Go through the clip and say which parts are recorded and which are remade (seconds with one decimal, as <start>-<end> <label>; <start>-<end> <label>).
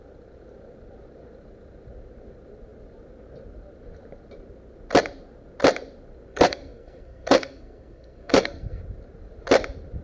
0.0-6.3 recorded; 6.3-8.8 remade; 8.8-10.0 recorded